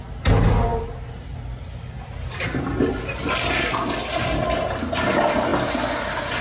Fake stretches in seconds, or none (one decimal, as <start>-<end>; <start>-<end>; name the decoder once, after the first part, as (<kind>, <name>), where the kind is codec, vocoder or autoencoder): none